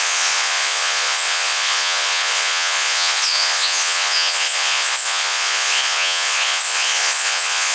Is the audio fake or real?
fake